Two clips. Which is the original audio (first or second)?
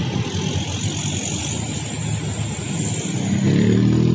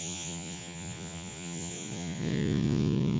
first